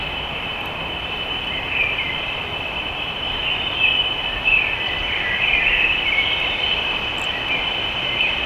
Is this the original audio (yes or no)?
no